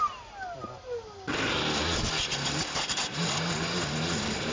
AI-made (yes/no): no